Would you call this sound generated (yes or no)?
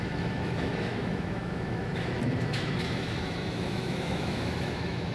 yes